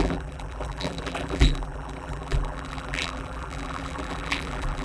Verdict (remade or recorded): remade